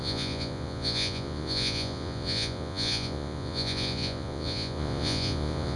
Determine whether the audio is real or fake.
fake